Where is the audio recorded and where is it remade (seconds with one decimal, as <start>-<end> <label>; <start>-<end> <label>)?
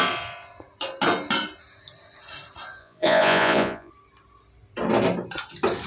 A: 0.0-2.8 recorded; 2.8-3.9 remade; 3.9-5.9 recorded